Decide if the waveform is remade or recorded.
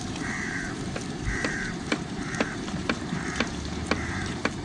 remade